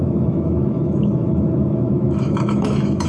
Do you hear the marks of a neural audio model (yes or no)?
yes